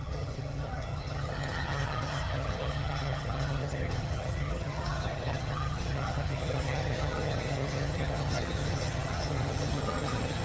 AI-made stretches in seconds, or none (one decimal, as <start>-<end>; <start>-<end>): 0.0-10.4